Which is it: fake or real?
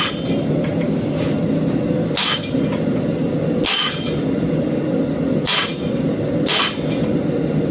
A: real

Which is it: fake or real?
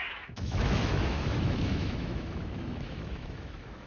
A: fake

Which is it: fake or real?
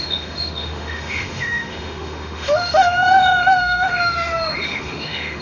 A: fake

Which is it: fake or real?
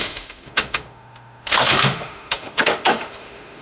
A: fake